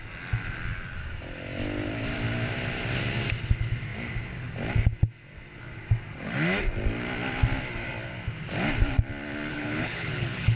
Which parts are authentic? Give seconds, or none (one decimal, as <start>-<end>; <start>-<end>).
0.0-9.5